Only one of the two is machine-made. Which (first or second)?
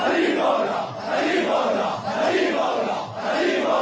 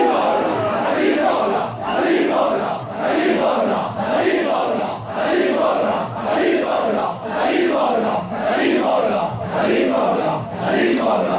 second